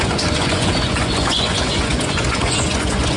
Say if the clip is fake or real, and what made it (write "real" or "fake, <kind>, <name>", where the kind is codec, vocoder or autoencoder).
fake, vocoder, Vocos